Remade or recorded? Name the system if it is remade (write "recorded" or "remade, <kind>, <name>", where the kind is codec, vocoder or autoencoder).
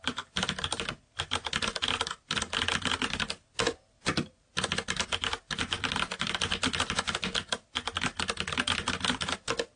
recorded